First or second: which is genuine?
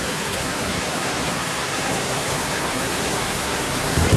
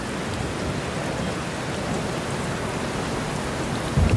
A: second